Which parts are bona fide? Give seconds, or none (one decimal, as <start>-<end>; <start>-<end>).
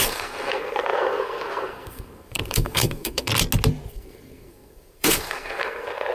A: 3.3-3.9